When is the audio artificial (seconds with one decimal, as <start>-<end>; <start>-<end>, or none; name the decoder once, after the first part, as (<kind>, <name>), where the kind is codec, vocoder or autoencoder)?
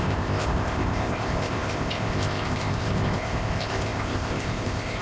0.0-5.0 (codec, ZipCodec)